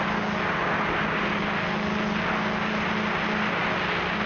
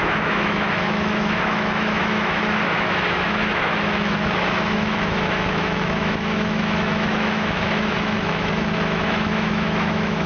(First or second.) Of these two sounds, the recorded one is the first